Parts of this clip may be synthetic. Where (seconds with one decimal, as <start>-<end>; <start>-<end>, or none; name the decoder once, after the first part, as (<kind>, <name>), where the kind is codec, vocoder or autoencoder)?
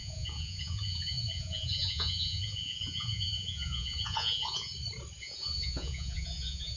0.0-4.7 (vocoder, Vocos); 5.2-6.8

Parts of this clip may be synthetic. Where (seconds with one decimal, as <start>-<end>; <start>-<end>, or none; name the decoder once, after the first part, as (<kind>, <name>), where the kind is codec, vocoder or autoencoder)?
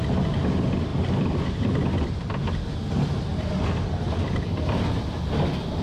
0.9-2.6 (vocoder, BigVGAN v2); 3.3-4.6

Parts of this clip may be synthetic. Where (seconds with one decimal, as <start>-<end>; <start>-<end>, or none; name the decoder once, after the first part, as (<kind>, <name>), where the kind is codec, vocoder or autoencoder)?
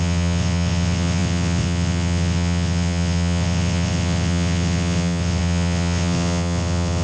0.0-7.0 (vocoder, WaveNeXt)